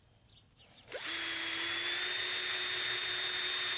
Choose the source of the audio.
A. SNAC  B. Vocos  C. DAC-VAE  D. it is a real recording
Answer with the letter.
D